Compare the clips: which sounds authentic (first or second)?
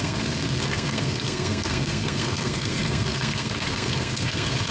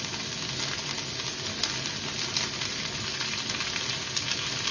second